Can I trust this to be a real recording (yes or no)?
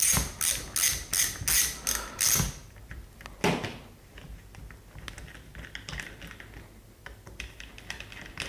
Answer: yes